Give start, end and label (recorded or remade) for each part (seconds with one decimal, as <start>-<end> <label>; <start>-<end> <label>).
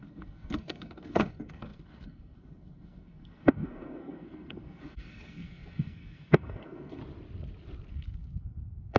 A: 0.0-7.0 remade; 7.0-7.9 recorded; 7.9-9.0 remade